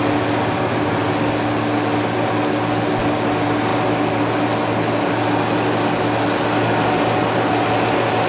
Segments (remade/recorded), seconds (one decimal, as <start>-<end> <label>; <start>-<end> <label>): 0.0-8.3 recorded